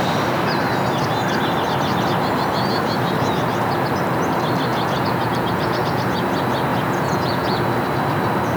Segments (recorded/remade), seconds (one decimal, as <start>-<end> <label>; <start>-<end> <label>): 0.0-4.7 recorded; 4.7-6.2 remade; 6.2-6.7 recorded; 6.7-7.6 remade; 7.6-8.6 recorded